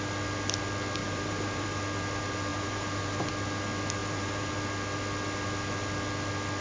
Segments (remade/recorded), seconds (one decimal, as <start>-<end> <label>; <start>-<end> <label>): 0.0-1.0 recorded; 1.0-1.8 remade; 1.8-2.5 recorded; 2.5-3.3 remade; 3.3-4.0 recorded; 4.0-4.5 remade; 4.5-6.6 recorded

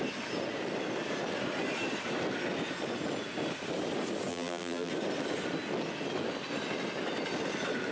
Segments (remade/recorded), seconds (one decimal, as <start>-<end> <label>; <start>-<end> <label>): 0.0-4.3 recorded; 4.3-4.9 remade; 4.9-7.9 recorded

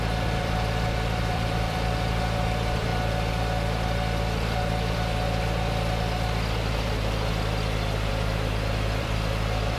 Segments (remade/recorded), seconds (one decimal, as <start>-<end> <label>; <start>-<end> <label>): 0.0-2.9 remade; 2.9-8.1 recorded; 8.1-9.8 remade

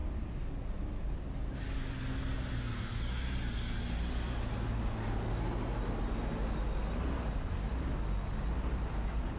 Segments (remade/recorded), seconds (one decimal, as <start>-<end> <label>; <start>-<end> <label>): 0.0-9.4 recorded

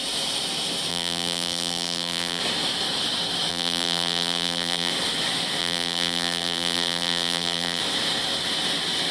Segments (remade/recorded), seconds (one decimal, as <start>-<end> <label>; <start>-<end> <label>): 0.0-0.9 recorded; 0.9-2.4 remade; 2.4-3.5 recorded; 3.5-4.9 remade; 4.9-5.6 recorded; 5.6-7.8 remade; 7.8-9.1 recorded